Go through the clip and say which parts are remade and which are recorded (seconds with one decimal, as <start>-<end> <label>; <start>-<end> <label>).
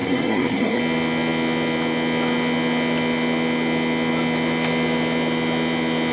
0.0-0.8 remade; 0.8-6.1 recorded